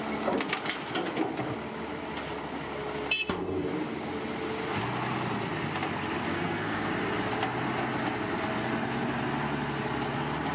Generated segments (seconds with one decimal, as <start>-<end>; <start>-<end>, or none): 6.3-6.9